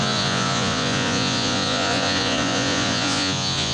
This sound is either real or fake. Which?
fake